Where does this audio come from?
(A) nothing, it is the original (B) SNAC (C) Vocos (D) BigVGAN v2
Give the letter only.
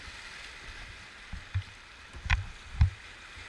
A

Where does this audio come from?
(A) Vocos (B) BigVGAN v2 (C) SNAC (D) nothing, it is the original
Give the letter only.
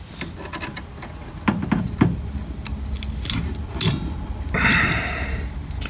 D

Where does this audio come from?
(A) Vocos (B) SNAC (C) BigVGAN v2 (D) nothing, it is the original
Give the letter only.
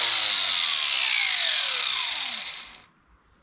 D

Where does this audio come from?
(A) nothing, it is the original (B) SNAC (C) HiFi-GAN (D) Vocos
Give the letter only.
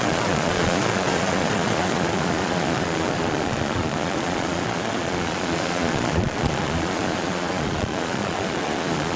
D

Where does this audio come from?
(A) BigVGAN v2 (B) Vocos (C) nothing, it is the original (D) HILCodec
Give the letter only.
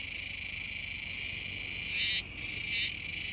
C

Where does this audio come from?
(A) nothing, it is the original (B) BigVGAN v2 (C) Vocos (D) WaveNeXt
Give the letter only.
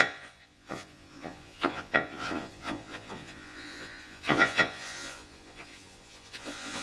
C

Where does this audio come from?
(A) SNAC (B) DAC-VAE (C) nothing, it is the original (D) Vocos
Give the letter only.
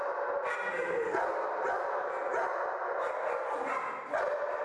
C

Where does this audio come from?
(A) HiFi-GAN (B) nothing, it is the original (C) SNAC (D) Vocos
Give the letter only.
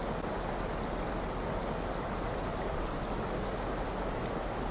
B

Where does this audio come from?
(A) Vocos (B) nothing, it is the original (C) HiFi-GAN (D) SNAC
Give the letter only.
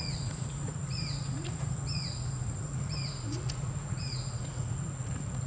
A